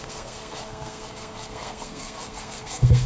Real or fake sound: fake